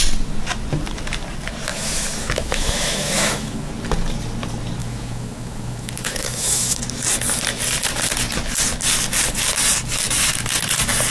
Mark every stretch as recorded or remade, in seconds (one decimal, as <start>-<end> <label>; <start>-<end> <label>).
0.0-1.7 recorded; 1.7-3.7 remade; 3.7-4.8 recorded; 4.8-6.8 remade; 6.8-11.1 recorded